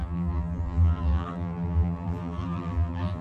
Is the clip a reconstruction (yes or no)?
yes